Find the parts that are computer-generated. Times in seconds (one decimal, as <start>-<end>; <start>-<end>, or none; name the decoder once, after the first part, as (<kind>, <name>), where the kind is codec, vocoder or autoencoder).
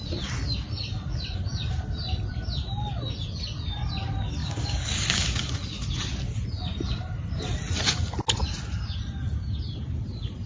4.4-5.5 (codec, DAC)